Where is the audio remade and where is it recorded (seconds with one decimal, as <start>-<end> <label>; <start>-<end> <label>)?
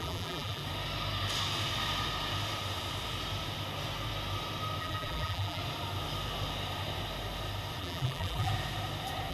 0.0-0.6 remade; 0.6-4.8 recorded; 4.8-5.6 remade; 5.6-7.8 recorded; 7.8-8.5 remade; 8.5-9.3 recorded